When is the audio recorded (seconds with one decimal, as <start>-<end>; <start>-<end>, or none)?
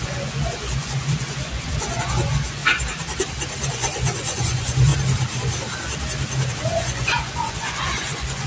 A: 2.6-3.7; 4.9-6.5